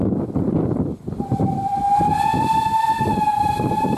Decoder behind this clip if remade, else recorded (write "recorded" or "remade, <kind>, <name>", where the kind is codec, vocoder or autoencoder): remade, vocoder, BigVGAN v2